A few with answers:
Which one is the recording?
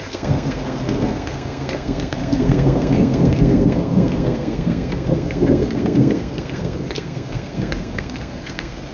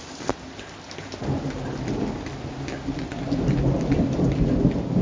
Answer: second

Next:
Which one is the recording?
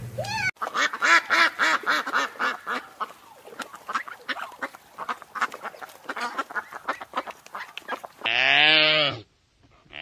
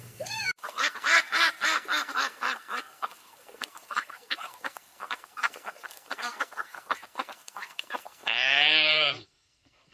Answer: first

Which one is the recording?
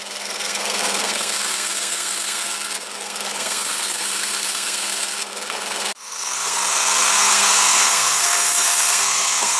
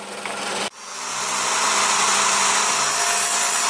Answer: second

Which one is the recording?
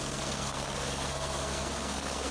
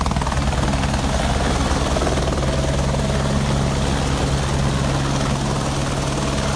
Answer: second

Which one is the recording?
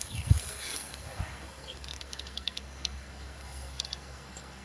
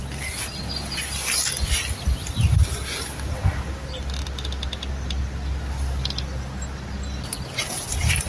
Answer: second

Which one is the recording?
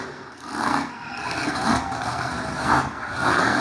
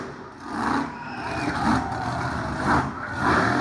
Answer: second